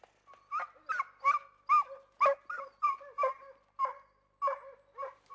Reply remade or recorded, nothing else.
recorded